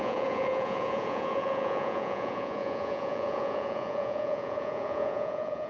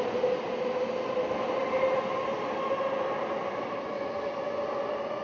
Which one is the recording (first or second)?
second